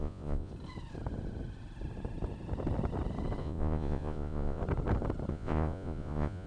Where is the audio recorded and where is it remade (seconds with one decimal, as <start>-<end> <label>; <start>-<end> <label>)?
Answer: 0.0-0.5 remade; 0.5-3.4 recorded; 3.4-4.6 remade; 4.6-5.3 recorded; 5.3-6.5 remade